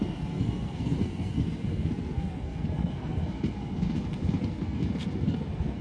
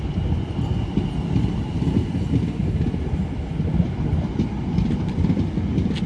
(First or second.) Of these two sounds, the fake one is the first